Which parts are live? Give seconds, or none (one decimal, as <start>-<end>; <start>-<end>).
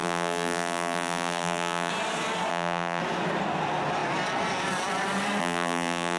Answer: 1.9-2.5; 3.0-5.4